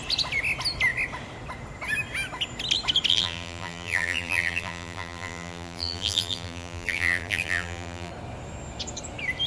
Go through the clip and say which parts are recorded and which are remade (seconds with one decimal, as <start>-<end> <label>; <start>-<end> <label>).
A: 0.0-3.1 recorded; 3.1-8.1 remade; 8.1-9.5 recorded